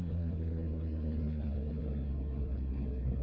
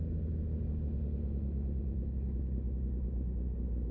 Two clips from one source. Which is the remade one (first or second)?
first